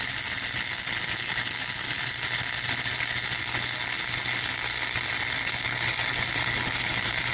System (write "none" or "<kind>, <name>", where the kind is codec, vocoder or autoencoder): none